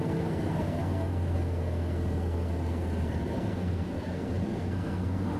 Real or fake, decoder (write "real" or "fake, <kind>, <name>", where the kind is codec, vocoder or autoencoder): fake, codec, SNAC